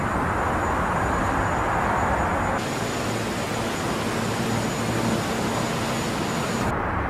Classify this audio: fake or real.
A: real